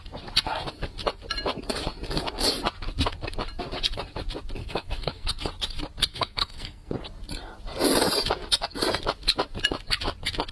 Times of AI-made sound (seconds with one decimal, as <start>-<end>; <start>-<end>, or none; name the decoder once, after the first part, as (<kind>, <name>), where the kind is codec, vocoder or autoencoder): 4.6-5.3 (codec, SNAC); 6.1-6.9